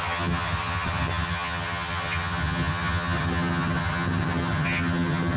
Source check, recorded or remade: remade